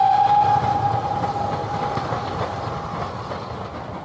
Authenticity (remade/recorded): recorded